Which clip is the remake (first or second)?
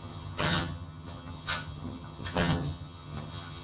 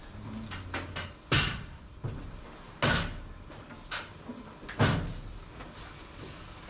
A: first